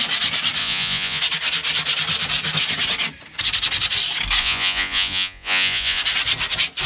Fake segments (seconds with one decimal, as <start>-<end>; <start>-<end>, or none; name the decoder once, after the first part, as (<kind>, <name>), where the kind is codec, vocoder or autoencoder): 0.6-1.2 (vocoder, Vocos); 4.4-6.0